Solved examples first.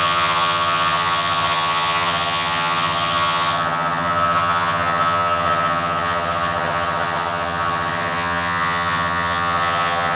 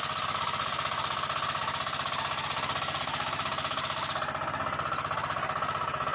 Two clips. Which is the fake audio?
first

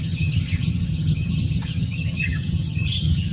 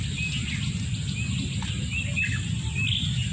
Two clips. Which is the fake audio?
first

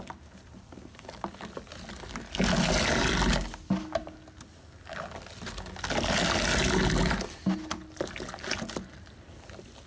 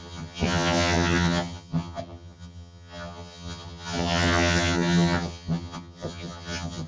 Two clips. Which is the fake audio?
second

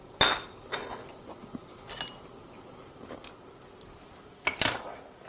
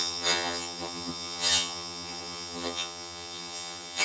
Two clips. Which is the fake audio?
second